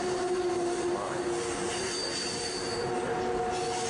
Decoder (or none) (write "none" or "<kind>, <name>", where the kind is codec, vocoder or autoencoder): none